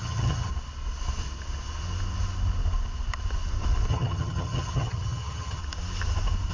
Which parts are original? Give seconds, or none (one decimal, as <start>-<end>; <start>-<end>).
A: 0.5-3.9; 5.6-6.5